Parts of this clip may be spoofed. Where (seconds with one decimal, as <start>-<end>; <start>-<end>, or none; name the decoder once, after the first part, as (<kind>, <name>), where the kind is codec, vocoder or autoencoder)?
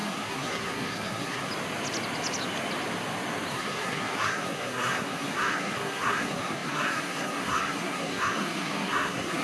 0.0-1.5 (codec, SNAC); 3.5-9.4